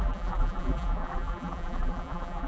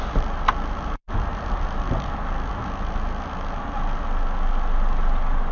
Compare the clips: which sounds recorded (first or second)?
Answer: second